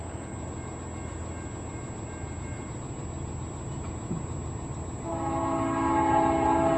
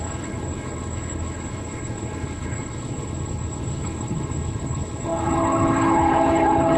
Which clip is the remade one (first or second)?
second